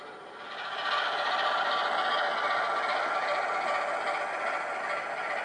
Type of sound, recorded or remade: recorded